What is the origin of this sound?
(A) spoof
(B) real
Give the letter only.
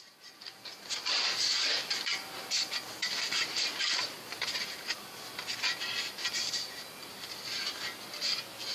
A